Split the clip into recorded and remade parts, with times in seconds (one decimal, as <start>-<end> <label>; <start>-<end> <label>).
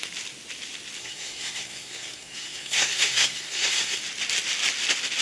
0.0-1.0 recorded; 1.0-4.0 remade; 4.0-5.2 recorded